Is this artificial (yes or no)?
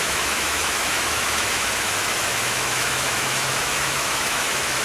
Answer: yes